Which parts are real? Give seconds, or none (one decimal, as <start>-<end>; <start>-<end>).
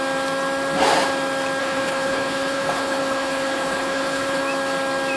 0.0-1.6; 4.4-5.2